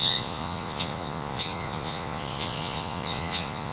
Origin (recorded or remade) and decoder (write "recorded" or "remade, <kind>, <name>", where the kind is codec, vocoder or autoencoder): remade, vocoder, Vocos